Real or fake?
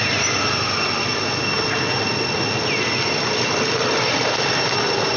real